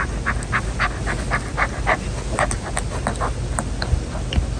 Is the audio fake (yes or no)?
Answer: no